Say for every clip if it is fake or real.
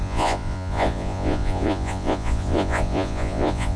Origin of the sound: fake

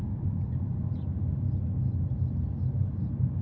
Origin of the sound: real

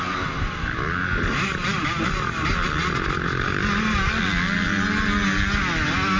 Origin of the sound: real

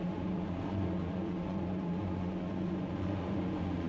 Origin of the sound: fake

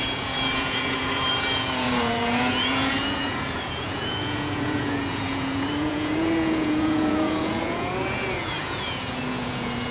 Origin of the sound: fake